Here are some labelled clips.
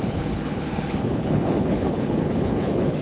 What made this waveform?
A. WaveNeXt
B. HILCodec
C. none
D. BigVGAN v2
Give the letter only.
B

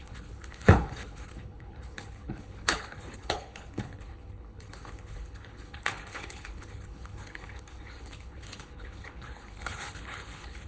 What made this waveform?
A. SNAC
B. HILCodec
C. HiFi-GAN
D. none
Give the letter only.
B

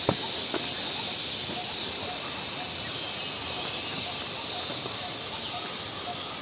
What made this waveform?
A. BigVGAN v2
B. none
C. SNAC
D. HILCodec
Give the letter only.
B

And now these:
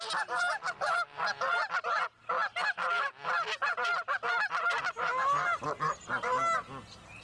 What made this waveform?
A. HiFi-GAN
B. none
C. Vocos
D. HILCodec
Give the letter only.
B